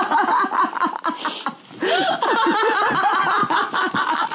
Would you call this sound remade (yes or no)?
no